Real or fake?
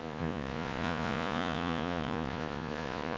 fake